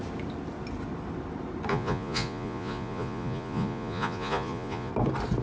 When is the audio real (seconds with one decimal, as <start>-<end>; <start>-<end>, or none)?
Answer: 0.0-1.7; 4.9-5.4